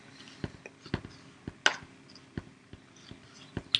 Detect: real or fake real